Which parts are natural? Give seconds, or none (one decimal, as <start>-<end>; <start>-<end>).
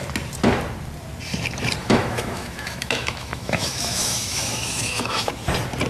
0.0-1.8; 5.3-5.9